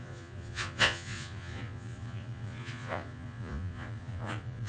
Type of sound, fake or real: fake